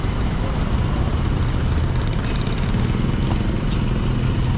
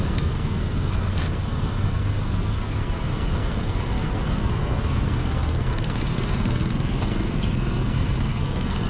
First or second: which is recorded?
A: first